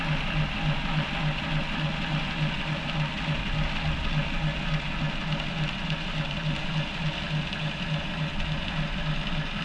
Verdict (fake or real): real